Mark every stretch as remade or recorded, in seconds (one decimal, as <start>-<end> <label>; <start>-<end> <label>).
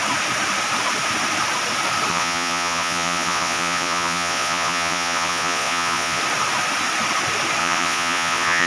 0.0-2.1 recorded; 2.1-6.2 remade; 6.2-7.6 recorded; 7.6-8.7 remade